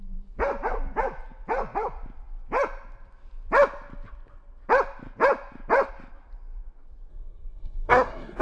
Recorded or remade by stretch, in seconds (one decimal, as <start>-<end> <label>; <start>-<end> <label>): 0.0-7.1 recorded; 7.1-8.4 remade

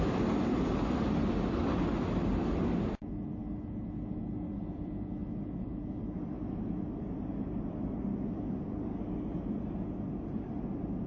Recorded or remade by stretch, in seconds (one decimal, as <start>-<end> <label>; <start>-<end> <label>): 0.0-11.1 recorded

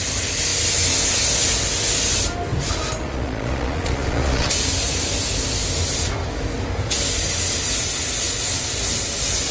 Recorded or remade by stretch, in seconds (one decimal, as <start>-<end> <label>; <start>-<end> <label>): 0.0-3.0 recorded; 3.0-4.5 remade; 4.5-9.5 recorded

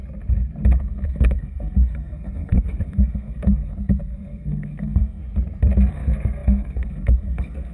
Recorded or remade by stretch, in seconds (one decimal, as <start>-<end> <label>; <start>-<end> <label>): 0.0-0.8 recorded; 0.8-5.2 remade; 5.2-5.9 recorded; 5.9-7.7 remade

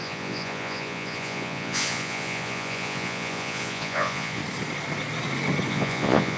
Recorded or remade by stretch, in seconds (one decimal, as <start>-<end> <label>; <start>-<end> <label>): 0.0-4.4 remade; 4.4-5.7 recorded; 5.7-6.4 remade

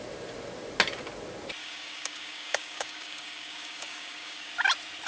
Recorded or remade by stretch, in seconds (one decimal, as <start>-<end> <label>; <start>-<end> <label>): 0.0-1.6 recorded; 1.6-4.5 remade; 4.5-5.1 recorded

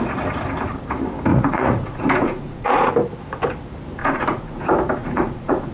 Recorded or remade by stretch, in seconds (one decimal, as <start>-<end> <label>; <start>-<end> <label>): 0.0-1.3 recorded; 1.3-2.9 remade; 2.9-4.0 recorded; 4.0-4.6 remade; 4.6-5.0 recorded; 5.0-5.7 remade